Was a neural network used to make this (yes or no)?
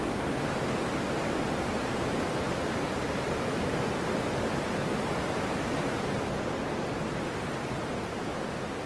no